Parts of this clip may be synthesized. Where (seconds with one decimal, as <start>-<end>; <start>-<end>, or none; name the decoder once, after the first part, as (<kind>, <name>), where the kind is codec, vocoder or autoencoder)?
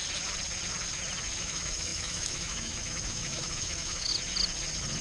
1.4-4.1 (autoencoder, DAC-VAE)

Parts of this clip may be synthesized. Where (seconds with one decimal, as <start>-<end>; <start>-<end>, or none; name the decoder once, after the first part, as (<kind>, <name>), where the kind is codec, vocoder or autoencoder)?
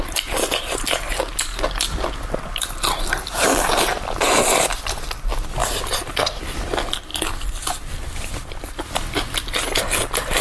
none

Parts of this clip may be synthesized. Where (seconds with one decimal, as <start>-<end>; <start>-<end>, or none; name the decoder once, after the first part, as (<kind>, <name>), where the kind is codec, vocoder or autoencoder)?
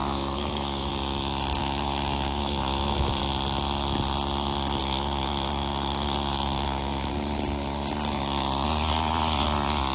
0.0-0.9 (autoencoder, DAC-VAE); 1.6-3.2; 4.8-7.1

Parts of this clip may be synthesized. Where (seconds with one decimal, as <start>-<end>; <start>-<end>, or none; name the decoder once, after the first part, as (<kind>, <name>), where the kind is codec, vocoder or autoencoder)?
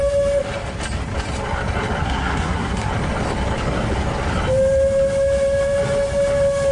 2.0-2.9 (codec, SNAC)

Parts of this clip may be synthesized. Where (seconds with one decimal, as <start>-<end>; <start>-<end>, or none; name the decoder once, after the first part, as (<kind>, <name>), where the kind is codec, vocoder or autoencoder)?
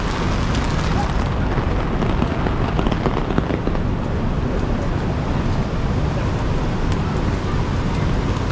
none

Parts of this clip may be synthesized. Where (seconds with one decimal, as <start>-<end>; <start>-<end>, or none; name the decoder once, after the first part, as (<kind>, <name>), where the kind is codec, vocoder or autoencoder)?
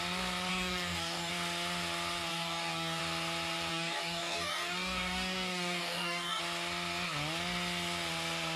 0.5-1.3 (codec, DAC); 2.3-3.0; 3.7-6.4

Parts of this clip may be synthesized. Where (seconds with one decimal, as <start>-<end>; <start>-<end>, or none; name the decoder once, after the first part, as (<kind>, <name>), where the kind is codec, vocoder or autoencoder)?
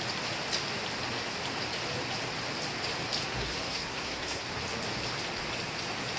3.2-4.5 (codec, SNAC)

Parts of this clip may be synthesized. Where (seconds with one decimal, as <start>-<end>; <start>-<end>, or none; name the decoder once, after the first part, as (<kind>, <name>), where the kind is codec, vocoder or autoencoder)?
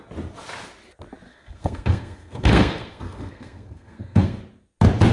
1.3-4.4 (codec, SNAC)